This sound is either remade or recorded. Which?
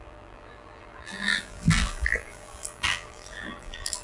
remade